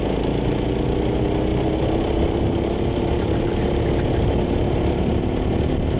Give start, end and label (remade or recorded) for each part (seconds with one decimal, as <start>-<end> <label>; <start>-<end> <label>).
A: 0.0-1.5 recorded; 1.5-4.3 remade; 4.3-6.0 recorded

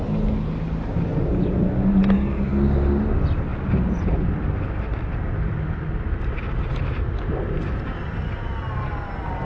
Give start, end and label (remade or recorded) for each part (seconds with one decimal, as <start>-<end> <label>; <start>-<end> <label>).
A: 0.0-9.4 recorded

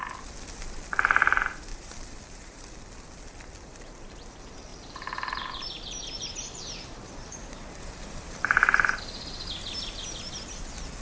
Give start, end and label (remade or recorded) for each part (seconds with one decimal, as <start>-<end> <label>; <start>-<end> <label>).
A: 0.0-1.7 recorded; 1.7-2.6 remade; 2.6-3.7 recorded; 3.7-4.2 remade; 4.2-4.7 recorded; 4.7-9.0 remade; 9.0-11.0 recorded

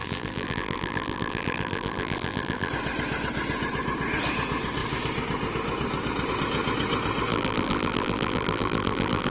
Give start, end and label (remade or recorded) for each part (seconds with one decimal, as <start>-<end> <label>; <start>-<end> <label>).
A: 0.0-2.7 remade; 2.7-7.3 recorded; 7.3-9.3 remade